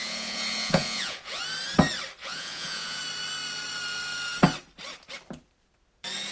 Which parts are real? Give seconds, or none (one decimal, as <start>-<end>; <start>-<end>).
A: 1.4-2.2; 3.0-6.3